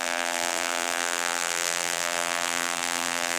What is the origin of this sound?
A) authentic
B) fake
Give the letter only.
B